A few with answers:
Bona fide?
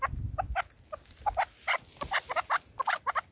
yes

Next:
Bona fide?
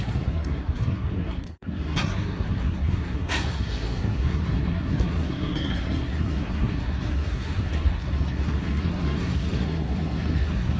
no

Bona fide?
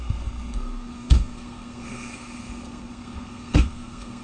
no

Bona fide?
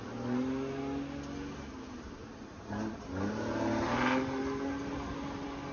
yes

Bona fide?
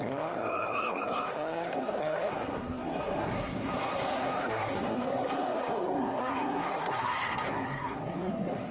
no